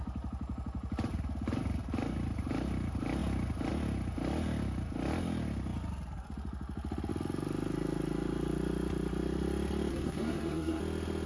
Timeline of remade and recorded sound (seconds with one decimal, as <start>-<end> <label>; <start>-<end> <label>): 0.0-9.9 recorded; 9.9-10.8 remade; 10.8-11.3 recorded